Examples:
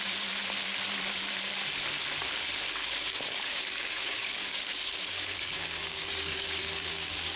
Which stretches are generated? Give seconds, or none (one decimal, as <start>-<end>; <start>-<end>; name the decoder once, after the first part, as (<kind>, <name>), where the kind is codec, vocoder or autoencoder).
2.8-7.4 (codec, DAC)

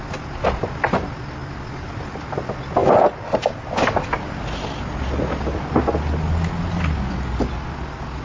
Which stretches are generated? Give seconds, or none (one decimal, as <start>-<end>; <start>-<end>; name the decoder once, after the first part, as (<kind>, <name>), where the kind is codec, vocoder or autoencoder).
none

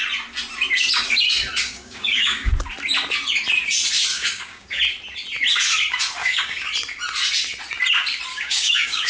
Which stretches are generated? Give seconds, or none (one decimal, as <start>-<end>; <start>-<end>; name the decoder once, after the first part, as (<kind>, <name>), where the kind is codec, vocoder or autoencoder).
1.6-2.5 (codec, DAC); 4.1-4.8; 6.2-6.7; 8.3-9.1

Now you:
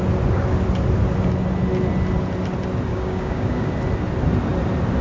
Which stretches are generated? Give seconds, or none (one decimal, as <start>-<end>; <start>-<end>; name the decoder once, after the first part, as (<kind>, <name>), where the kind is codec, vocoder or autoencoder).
2.9-3.7 (codec, DAC)